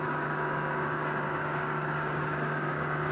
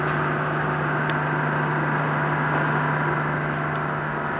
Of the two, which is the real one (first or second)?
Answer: second